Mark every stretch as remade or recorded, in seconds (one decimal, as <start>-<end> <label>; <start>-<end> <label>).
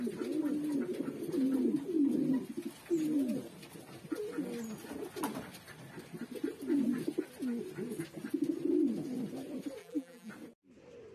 0.0-9.8 recorded; 9.8-10.3 remade; 10.3-11.1 recorded